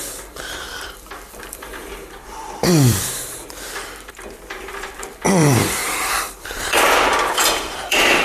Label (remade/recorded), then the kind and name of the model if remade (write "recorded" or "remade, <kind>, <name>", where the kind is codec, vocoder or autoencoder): remade, vocoder, BigVGAN v2